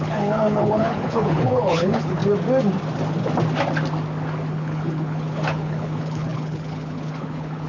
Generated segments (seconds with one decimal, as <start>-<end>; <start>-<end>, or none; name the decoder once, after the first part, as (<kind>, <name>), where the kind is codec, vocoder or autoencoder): 0.0-2.2 (codec, HILCodec); 4.5-7.7